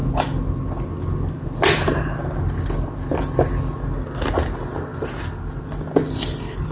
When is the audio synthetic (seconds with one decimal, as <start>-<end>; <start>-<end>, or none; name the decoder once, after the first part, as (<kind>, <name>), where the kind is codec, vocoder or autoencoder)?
none